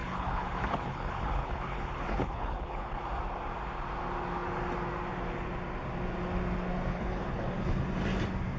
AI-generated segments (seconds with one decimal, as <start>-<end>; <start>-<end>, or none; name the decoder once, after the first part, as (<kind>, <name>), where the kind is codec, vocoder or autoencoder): 0.0-3.0 (codec, HILCodec); 6.9-7.8